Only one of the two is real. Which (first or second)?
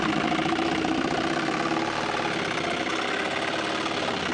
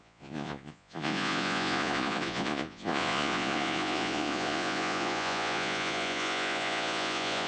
first